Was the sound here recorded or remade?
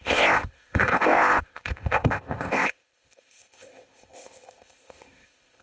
remade